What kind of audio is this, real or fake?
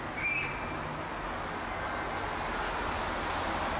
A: real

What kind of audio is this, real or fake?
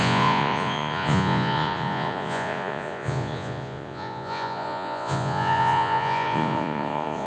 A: fake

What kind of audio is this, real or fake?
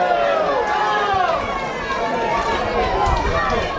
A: real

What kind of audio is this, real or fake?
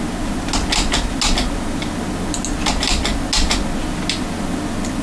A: real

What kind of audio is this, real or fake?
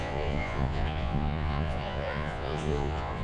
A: fake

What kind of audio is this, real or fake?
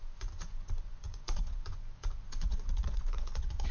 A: fake